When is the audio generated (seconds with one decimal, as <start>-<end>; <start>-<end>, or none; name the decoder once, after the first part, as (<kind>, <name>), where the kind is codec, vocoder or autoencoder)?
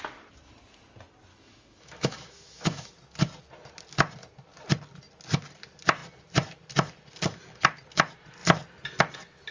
1.3-2.9 (autoencoder, DAC-VAE)